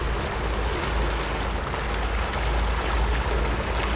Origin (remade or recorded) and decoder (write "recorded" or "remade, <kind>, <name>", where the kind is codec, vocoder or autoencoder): recorded